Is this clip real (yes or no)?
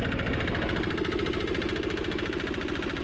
yes